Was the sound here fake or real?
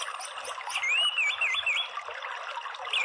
real